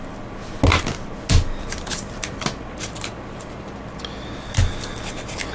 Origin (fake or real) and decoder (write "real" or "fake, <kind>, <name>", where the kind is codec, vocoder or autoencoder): real